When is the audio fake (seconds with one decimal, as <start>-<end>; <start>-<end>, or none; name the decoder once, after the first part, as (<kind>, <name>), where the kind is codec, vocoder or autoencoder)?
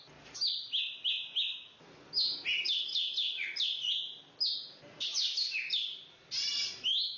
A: none